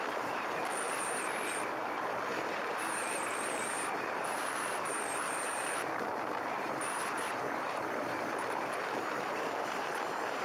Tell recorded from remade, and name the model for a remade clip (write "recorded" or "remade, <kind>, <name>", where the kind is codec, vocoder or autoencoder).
remade, vocoder, BigVGAN v2